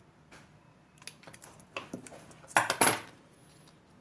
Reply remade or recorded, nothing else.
recorded